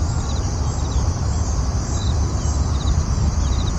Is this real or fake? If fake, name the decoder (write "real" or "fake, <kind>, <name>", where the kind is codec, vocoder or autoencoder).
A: fake, vocoder, BigVGAN v2